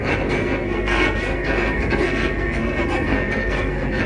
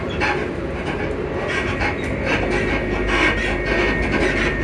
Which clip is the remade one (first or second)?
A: first